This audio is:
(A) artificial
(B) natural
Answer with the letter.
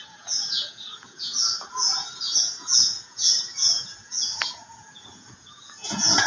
A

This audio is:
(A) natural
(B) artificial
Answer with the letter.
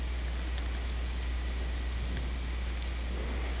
A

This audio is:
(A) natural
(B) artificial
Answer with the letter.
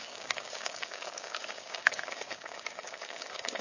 B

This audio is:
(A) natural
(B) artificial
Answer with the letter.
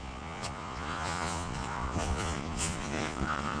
B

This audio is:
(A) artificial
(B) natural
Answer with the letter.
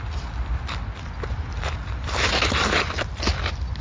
B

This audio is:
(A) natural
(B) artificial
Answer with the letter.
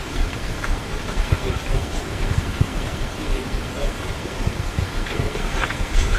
B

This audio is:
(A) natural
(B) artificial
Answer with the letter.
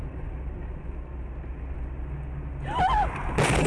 A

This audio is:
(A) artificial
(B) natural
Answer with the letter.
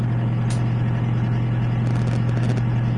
B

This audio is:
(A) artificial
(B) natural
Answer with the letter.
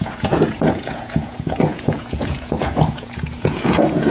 A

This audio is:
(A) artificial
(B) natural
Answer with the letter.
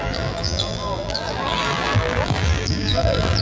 A